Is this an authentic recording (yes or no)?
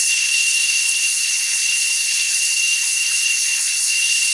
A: no